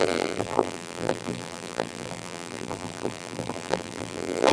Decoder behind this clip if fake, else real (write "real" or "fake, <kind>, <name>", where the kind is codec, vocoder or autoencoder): fake, vocoder, BigVGAN v2